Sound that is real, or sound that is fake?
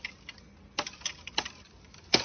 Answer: real